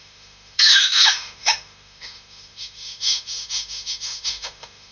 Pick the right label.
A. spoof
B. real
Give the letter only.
A